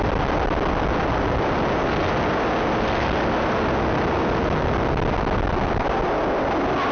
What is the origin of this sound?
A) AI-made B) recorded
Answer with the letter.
B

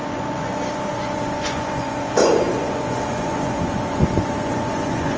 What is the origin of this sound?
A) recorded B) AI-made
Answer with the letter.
B